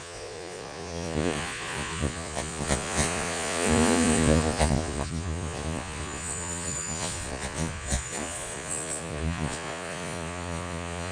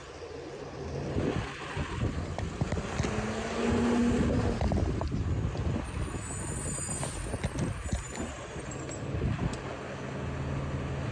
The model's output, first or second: first